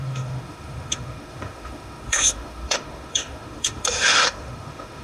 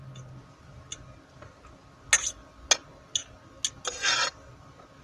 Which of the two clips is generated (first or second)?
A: first